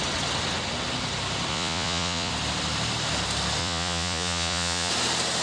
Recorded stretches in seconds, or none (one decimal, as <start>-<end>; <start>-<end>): 0.0-1.5; 2.3-3.6; 4.9-5.4